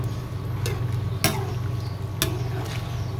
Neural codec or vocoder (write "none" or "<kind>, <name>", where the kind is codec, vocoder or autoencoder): none